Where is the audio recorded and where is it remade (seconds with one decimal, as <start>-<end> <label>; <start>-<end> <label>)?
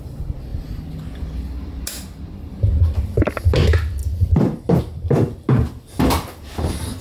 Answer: 0.0-4.0 recorded; 4.0-4.8 remade; 4.8-7.0 recorded